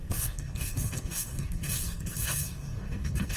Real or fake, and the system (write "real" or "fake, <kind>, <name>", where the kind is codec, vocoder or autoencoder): fake, codec, SNAC